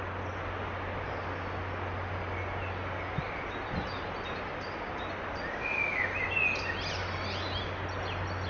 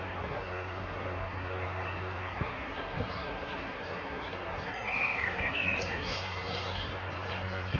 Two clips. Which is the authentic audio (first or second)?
first